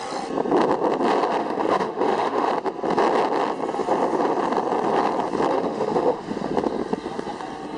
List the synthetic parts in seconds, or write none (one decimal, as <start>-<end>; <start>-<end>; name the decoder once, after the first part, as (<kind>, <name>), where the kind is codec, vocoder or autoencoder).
1.4-2.5 (autoencoder, DAC-VAE); 5.5-6.5